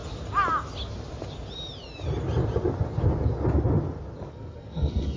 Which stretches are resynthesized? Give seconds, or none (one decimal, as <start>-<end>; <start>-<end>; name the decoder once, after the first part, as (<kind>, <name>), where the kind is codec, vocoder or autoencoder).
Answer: 4.3-5.2 (codec, SNAC)